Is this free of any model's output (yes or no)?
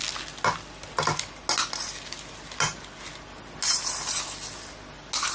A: yes